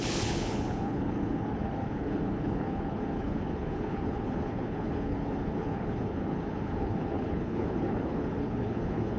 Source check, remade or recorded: remade